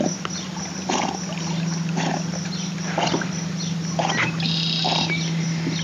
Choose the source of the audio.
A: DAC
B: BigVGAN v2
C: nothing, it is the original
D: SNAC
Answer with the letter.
C